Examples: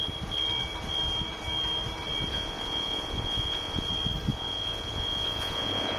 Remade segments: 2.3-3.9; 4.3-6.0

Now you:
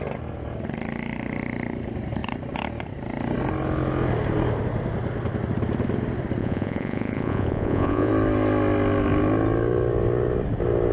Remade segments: 6.4-8.1

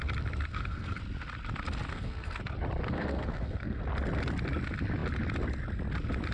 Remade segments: 0.5-1.0; 1.9-2.4; 2.8-3.8

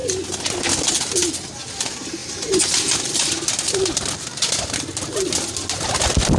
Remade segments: 2.2-4.2

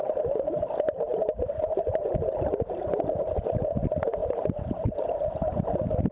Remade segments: none

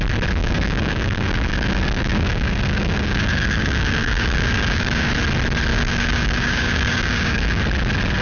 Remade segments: 0.4-5.1; 5.7-7.6

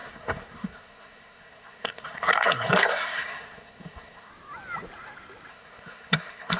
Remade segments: 0.0-4.3; 5.5-6.6